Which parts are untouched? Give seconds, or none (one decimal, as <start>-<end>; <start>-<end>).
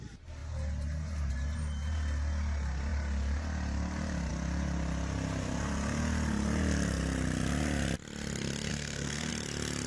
0.0-8.7; 9.3-9.9